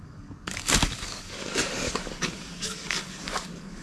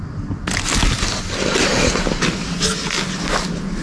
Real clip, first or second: second